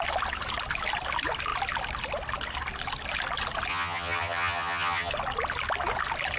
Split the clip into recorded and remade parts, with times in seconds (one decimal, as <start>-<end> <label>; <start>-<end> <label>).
0.0-3.7 recorded; 3.7-5.1 remade; 5.1-6.4 recorded